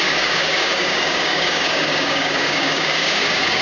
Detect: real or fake fake